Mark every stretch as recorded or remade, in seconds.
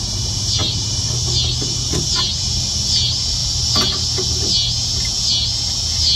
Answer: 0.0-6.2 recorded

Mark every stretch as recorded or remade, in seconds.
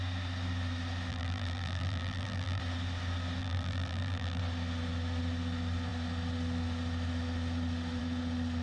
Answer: 0.0-1.1 recorded; 1.1-2.6 remade; 2.6-3.4 recorded; 3.4-4.4 remade; 4.4-8.6 recorded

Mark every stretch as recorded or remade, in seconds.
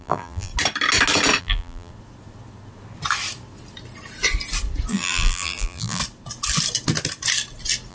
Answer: 0.0-0.5 remade; 0.5-1.4 recorded; 1.4-1.9 remade; 1.9-4.9 recorded; 4.9-6.0 remade; 6.0-7.9 recorded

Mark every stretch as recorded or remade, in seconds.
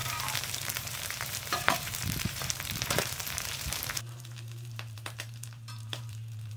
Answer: 0.0-6.6 remade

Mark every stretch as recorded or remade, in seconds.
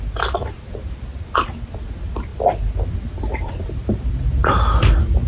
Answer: 0.0-4.4 recorded; 4.4-5.3 remade